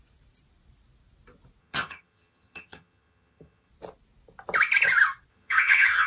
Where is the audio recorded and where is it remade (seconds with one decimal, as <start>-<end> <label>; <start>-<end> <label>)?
0.0-1.6 recorded; 1.6-3.7 remade; 3.7-5.3 recorded; 5.3-6.1 remade